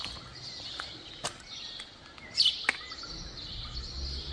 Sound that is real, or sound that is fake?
real